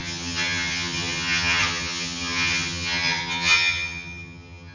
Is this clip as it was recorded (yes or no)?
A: no